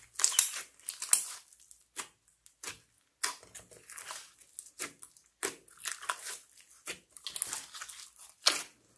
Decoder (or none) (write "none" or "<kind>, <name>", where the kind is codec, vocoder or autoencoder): none